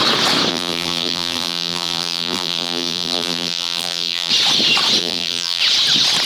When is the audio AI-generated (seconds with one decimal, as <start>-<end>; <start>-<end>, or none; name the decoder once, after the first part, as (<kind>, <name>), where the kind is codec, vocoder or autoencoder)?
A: 0.5-4.3 (vocoder, BigVGAN v2); 5.0-5.6